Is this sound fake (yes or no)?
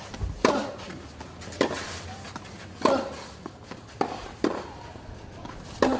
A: no